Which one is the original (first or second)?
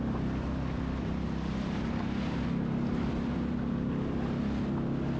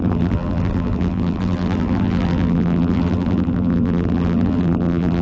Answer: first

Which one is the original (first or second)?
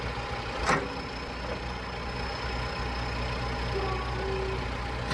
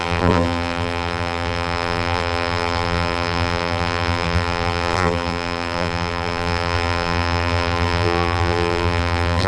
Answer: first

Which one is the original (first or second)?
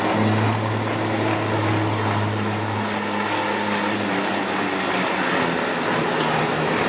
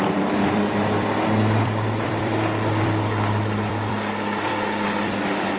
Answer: first